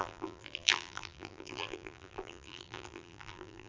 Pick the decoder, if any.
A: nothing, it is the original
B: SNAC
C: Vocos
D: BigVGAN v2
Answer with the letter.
D